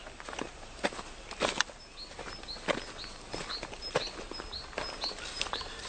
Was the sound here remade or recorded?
recorded